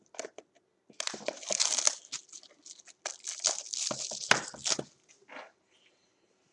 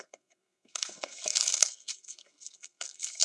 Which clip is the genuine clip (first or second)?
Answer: first